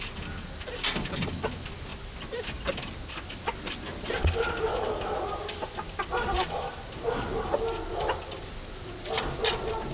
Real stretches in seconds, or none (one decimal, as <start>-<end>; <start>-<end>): 0.0-9.9